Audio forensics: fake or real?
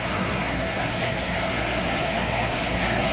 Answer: fake